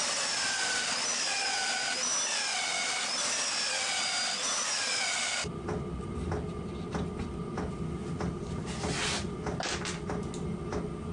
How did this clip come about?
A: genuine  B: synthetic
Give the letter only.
A